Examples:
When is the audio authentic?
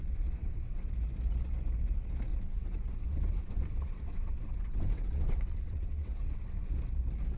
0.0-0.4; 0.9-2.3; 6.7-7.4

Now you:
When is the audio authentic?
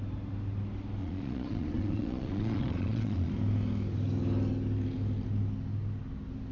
0.0-1.0; 3.3-6.5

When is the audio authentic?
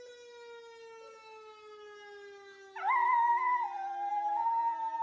0.0-5.0